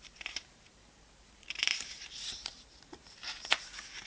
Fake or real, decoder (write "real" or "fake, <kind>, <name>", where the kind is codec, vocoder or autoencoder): fake, vocoder, BigVGAN v2